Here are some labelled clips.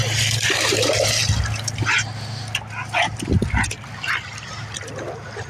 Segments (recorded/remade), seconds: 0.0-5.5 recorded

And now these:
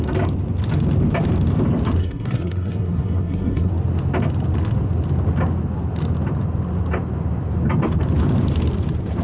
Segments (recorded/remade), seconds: 0.0-2.0 recorded; 2.0-3.7 remade; 3.7-9.2 recorded

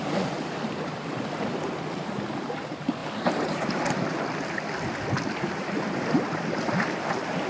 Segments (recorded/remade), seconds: 0.0-7.5 recorded